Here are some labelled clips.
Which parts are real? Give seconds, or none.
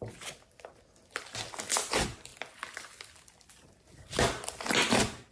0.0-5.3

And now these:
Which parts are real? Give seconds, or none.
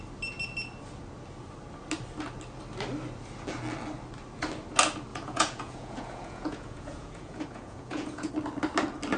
0.0-5.1; 8.3-9.2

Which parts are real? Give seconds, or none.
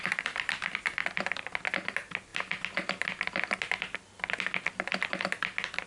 0.0-5.9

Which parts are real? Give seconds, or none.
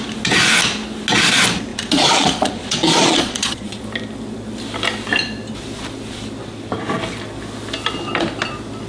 0.0-1.7; 3.8-8.9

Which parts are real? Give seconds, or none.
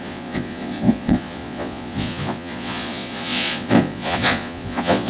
none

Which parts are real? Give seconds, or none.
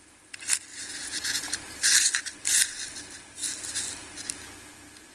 0.0-0.7; 1.4-5.1